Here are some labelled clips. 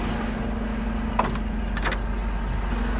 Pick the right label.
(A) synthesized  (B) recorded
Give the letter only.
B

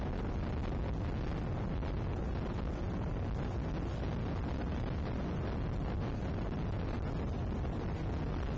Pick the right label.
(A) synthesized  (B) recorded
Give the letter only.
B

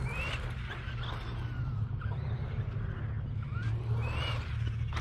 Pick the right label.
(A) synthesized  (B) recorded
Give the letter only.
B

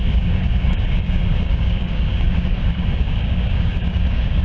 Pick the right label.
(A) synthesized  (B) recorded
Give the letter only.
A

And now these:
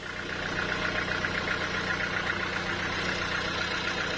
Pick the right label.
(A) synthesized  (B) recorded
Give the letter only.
B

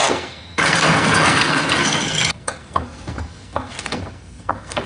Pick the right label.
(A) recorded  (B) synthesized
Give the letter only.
B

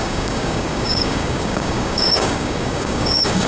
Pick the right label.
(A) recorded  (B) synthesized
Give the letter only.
B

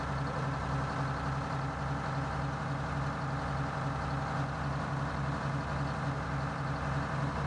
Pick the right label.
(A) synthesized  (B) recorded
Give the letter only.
B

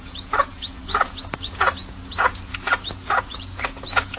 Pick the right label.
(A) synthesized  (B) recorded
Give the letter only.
A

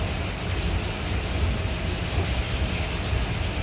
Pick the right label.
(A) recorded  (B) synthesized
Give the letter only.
A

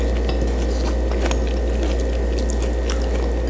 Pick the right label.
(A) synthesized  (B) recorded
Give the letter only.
B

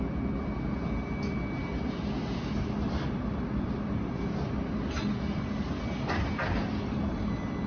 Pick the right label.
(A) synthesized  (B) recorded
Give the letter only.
B